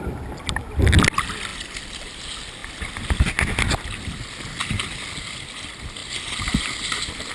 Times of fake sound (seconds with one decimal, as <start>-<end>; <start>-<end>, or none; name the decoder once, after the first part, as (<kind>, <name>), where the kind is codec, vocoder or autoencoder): 1.5-2.2 (vocoder, BigVGAN v2)